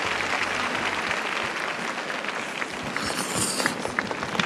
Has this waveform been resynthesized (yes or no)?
no